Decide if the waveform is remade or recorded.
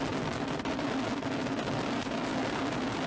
recorded